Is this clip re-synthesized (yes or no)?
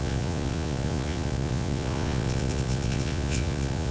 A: yes